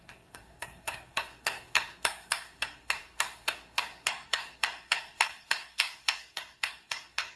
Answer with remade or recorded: remade